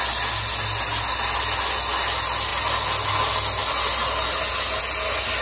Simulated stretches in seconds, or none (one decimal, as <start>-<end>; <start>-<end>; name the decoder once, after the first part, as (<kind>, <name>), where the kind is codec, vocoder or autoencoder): none